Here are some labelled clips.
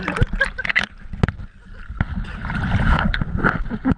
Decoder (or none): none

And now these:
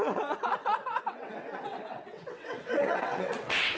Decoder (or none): vocoder, WaveNeXt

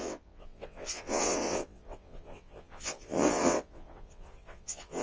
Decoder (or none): vocoder, WaveNeXt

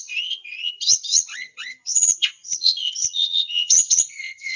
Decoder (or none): vocoder, WaveNeXt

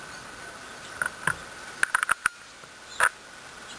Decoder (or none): none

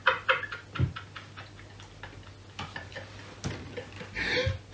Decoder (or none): none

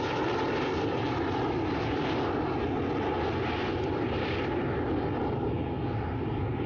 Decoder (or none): none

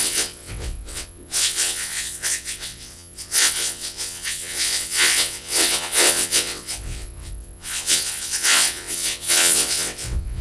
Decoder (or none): vocoder, WaveNeXt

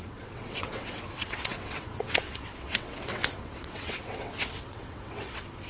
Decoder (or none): vocoder, WaveNeXt